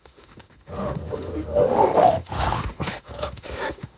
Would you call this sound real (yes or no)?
no